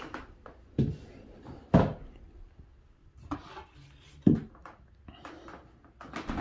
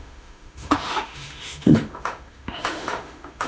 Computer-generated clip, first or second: second